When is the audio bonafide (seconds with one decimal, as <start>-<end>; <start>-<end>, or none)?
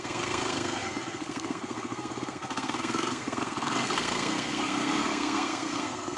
none